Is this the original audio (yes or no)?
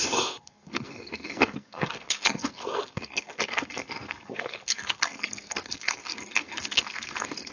no